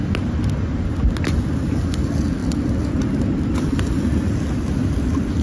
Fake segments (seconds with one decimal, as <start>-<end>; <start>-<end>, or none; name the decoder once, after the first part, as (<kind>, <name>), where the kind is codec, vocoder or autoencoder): none